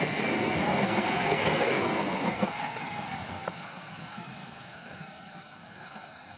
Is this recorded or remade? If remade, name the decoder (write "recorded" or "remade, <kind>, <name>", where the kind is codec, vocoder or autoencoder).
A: remade, codec, SNAC